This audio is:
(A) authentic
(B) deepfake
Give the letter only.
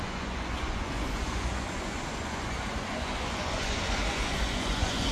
B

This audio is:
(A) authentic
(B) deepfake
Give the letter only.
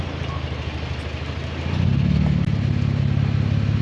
A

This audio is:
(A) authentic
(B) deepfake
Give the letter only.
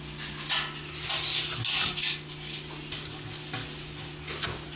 A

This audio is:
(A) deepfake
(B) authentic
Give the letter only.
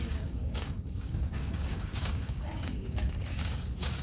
A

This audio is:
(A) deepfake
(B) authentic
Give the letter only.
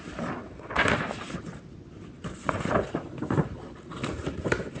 B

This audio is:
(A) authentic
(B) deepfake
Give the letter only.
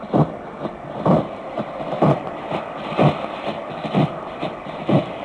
B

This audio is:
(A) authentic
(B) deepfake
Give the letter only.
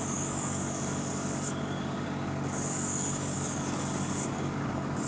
B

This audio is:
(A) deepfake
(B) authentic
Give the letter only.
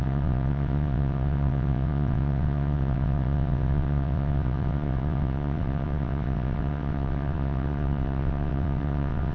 A